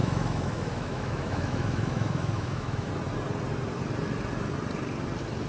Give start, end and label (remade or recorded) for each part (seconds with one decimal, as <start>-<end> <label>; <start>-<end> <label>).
0.0-2.9 remade; 2.9-5.5 recorded